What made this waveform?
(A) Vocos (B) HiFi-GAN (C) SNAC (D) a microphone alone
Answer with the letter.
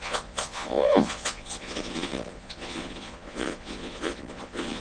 A